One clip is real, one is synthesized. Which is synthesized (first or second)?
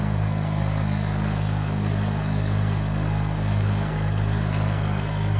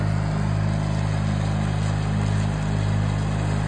first